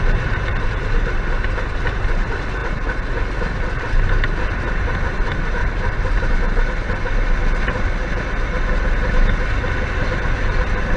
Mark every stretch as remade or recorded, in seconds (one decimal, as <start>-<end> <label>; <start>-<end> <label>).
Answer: 0.0-5.6 recorded; 5.6-6.4 remade; 6.4-11.0 recorded